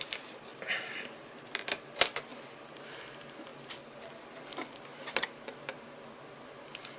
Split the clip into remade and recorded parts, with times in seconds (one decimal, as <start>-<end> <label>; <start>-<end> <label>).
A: 0.0-2.3 recorded; 2.3-2.8 remade; 2.8-3.5 recorded; 3.5-4.0 remade; 4.0-7.0 recorded